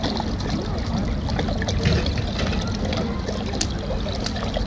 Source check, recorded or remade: recorded